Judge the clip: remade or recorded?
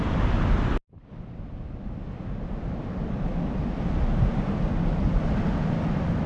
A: recorded